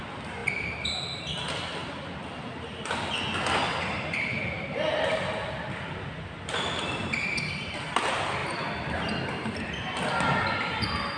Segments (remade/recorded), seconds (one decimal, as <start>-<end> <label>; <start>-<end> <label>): 0.0-11.2 recorded